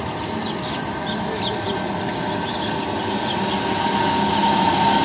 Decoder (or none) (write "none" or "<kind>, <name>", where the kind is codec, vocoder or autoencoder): none